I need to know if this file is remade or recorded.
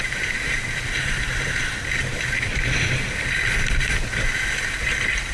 recorded